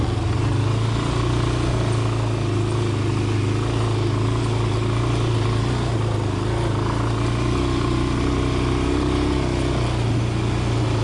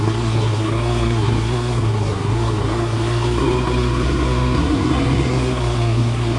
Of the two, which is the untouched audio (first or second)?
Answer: first